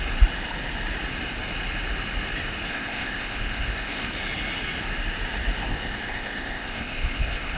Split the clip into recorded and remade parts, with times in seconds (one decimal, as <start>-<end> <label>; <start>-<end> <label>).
0.0-2.7 recorded; 2.7-4.1 remade; 4.1-5.7 recorded; 5.7-7.6 remade